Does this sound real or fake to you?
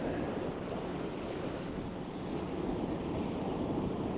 real